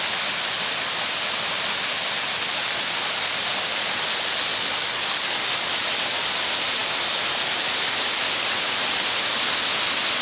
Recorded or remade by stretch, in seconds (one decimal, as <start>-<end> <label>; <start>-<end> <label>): 0.0-4.5 recorded; 4.5-5.7 remade; 5.7-10.2 recorded